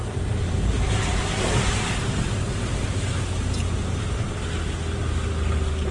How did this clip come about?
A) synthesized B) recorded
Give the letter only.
B